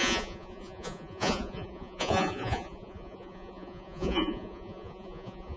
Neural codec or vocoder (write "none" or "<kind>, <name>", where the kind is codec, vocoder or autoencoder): vocoder, Vocos